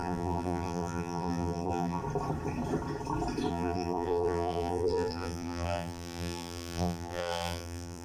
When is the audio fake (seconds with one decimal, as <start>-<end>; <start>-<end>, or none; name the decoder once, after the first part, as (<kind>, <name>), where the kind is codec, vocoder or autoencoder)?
0.0-2.0 (vocoder, BigVGAN v2); 3.5-8.0